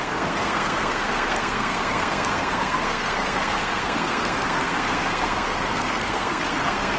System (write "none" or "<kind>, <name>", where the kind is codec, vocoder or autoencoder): codec, SNAC